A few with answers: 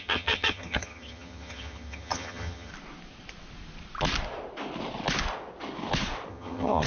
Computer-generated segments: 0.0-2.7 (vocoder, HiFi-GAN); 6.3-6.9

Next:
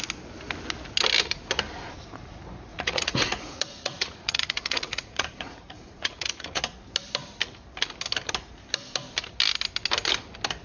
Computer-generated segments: 2.7-6.6 (vocoder, Vocos)

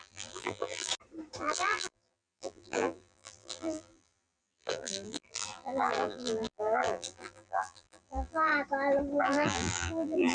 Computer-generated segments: 0.0-0.9 (vocoder, BigVGAN v2); 1.4-8.5; 9.2-10.3

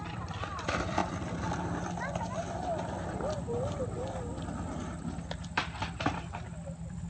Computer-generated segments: 0.0-7.1 (vocoder, BigVGAN v2)

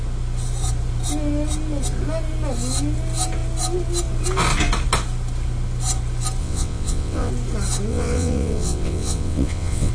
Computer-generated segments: 6.4-7.3 (vocoder, WaveNeXt); 7.9-9.9

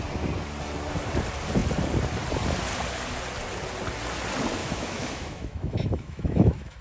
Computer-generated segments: 4.6-6.8 (autoencoder, DAC-VAE)

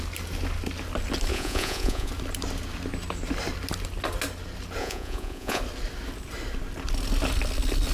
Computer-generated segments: 1.3-2.1 (vocoder, Vocos); 4.8-5.6